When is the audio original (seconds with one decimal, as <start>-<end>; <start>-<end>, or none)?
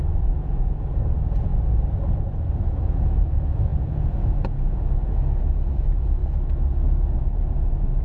1.5-2.7; 6.2-6.8